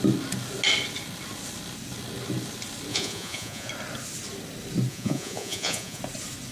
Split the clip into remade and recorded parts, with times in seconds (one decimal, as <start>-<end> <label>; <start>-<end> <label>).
0.0-2.9 recorded; 2.9-3.7 remade; 3.7-4.9 recorded; 4.9-6.0 remade; 6.0-6.5 recorded